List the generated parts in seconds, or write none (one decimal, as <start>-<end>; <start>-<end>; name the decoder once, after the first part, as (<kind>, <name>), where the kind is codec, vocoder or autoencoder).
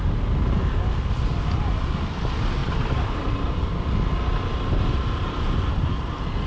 2.6-3.7 (vocoder, BigVGAN v2); 4.5-5.6